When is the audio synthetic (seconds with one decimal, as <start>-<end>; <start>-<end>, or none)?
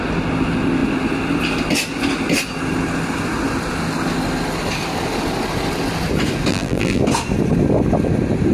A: 6.5-7.0